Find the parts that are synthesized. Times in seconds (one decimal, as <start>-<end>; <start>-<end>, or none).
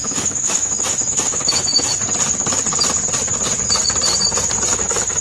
0.0-1.9; 4.7-5.2